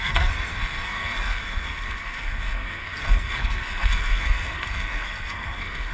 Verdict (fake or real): fake